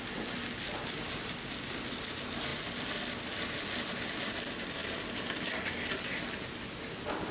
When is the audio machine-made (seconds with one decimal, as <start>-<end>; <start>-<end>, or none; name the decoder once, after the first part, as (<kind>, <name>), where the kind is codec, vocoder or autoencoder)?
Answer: 4.8-5.9 (vocoder, BigVGAN v2)